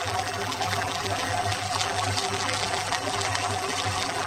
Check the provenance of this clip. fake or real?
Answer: fake